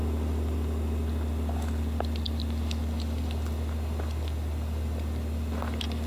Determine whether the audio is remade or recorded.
recorded